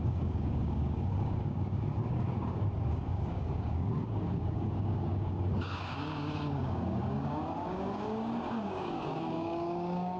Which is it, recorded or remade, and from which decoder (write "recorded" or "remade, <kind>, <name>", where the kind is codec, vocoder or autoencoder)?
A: remade, codec, DAC